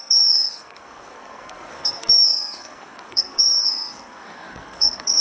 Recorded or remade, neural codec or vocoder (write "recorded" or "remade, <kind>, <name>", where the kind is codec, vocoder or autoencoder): remade, codec, SNAC